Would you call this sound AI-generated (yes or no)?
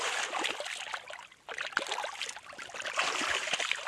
no